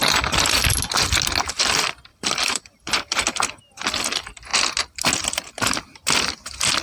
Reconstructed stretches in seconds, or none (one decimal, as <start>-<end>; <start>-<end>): 2.1-3.2